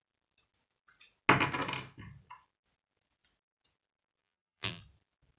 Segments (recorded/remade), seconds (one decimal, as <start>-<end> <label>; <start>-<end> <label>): 0.0-4.2 recorded; 4.2-4.8 remade; 4.8-5.4 recorded